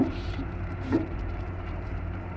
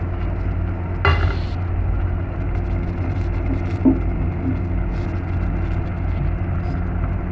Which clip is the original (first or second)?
second